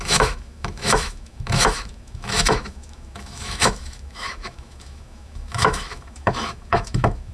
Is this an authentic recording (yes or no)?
no